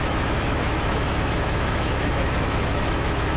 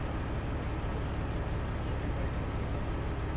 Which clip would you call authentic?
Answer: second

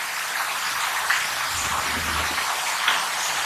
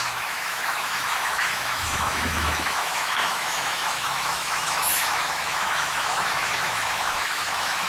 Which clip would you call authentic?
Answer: first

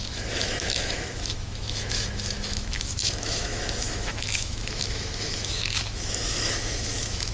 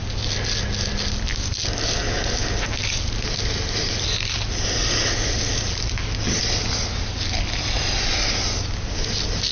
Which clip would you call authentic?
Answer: second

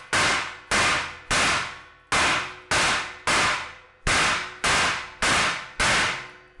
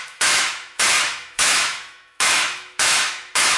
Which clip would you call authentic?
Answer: first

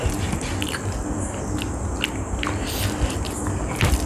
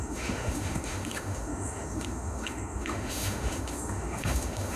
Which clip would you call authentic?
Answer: first